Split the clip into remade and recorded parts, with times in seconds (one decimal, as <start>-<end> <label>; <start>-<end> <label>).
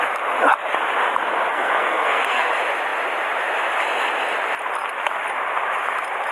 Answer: 0.0-1.5 recorded; 1.5-2.5 remade; 2.5-6.3 recorded